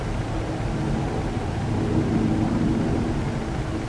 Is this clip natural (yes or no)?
yes